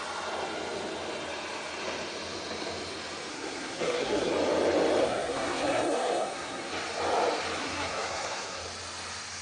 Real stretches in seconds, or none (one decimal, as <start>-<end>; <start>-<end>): 0.0-3.3; 4.3-5.0; 6.7-7.6; 8.6-9.4